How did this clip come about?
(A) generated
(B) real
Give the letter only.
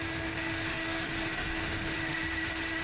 A